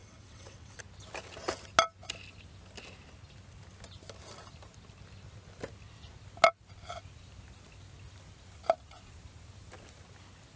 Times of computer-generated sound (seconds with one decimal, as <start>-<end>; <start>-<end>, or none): 0.0-0.8